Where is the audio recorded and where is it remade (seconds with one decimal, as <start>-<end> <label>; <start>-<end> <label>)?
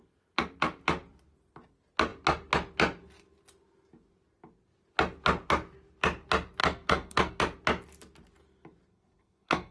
0.0-6.6 recorded; 6.6-7.4 remade; 7.4-8.9 recorded; 8.9-9.7 remade